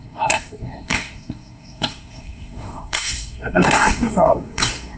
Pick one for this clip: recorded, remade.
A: remade